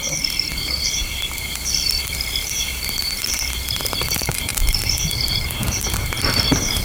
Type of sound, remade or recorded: remade